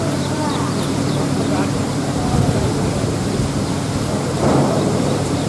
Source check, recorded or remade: remade